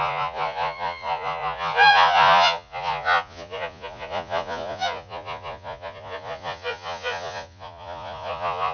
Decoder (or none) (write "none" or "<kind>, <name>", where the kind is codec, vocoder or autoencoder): vocoder, Vocos